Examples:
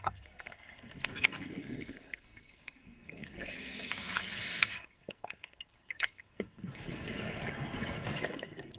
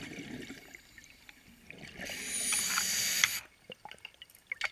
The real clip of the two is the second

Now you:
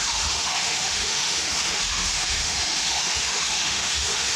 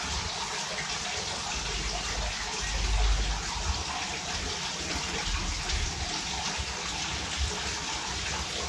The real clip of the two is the second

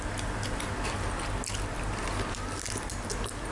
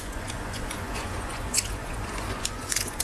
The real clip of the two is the first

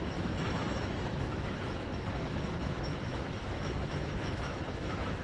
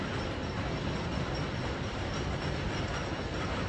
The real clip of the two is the second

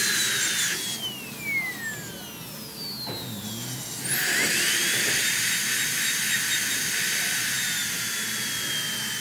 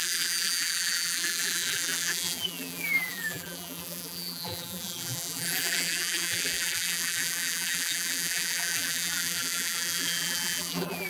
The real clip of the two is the first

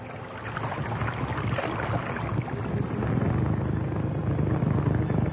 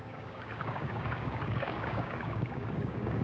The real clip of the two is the first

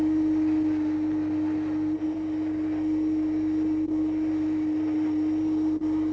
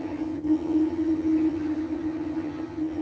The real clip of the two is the first